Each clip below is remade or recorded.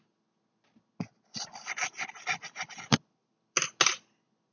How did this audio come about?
recorded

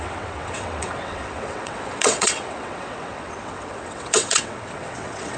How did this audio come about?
remade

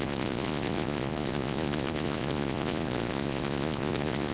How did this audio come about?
remade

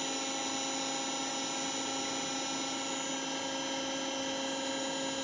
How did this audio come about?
recorded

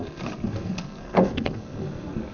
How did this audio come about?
remade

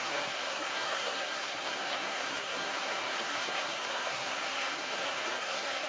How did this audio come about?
remade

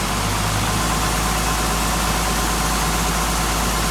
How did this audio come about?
recorded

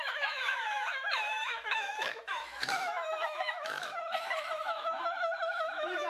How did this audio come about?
remade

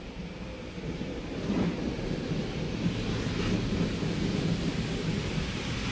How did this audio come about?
recorded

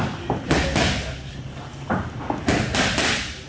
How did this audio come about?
recorded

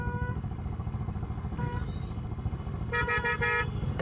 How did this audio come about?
remade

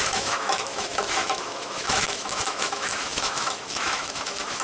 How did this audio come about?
remade